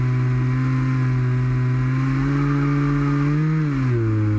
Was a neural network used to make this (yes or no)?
no